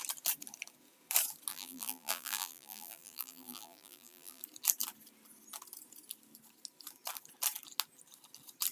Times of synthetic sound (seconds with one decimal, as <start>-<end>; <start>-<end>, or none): 1.5-4.4